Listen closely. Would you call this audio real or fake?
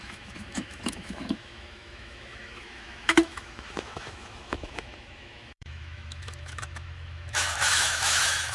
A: fake